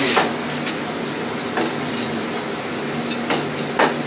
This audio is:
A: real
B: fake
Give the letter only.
A